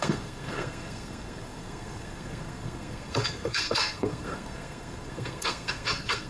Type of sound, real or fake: fake